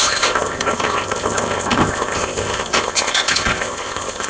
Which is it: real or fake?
fake